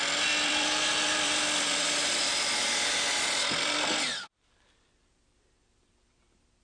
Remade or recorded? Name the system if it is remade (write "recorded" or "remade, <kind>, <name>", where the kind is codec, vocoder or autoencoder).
remade, vocoder, BigVGAN v2